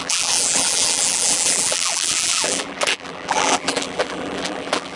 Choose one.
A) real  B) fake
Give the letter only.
B